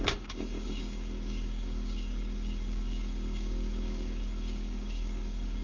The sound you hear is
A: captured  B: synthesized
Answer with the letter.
B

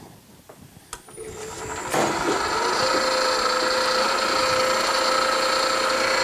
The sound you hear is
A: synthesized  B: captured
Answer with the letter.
B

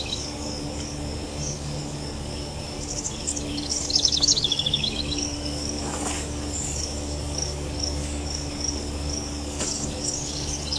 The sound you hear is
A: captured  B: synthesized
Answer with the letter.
B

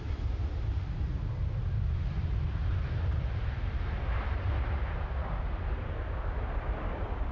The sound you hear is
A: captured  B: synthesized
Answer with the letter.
A